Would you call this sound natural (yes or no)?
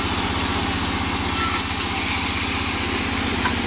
yes